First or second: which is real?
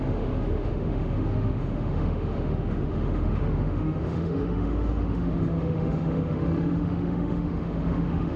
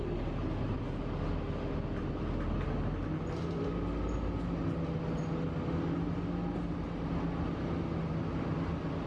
second